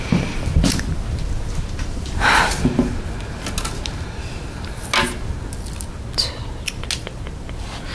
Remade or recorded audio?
recorded